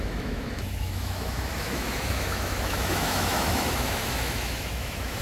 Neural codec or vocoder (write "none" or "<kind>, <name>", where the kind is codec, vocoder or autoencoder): autoencoder, DAC-VAE